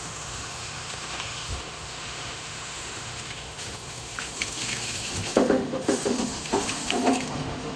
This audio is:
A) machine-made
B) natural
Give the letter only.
A